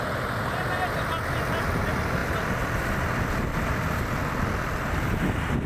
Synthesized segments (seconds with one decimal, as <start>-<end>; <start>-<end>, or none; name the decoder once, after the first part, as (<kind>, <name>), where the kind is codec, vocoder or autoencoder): none